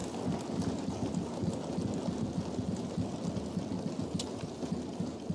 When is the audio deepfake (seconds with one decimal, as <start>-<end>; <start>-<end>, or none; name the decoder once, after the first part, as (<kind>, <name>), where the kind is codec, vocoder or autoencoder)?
none